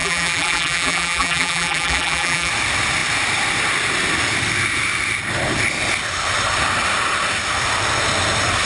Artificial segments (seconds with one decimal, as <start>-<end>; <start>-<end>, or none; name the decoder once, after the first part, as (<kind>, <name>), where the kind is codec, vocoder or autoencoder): 0.0-2.5 (vocoder, BigVGAN v2)